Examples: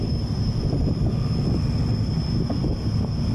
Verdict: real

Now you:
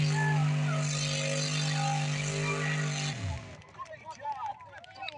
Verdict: real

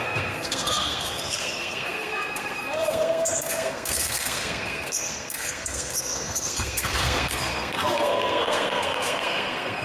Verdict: fake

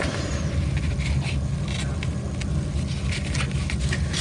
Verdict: real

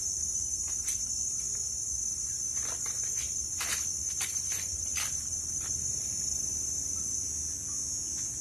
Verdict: real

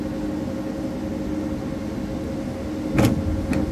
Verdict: real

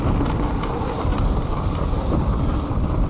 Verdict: real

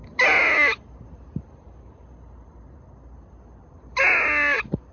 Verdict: real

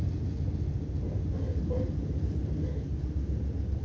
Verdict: real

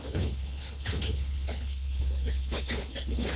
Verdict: fake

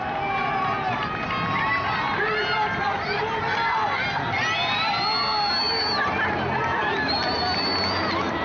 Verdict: real